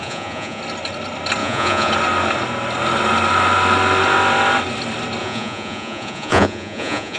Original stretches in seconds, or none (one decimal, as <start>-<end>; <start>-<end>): 0.6-1.4; 1.9-5.2